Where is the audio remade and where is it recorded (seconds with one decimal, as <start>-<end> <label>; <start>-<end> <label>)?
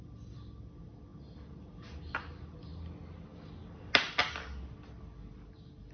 0.0-5.9 recorded